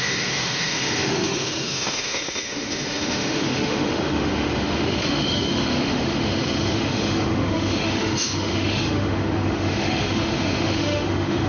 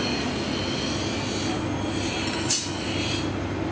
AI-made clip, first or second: first